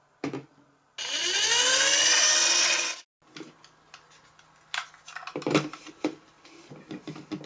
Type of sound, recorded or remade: recorded